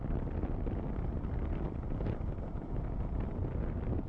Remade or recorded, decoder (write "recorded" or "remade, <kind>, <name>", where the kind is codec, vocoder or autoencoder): recorded